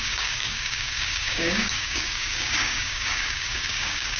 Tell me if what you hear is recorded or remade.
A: remade